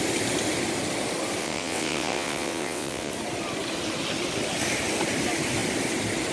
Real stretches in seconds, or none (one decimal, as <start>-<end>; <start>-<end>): 0.0-1.4; 3.1-6.3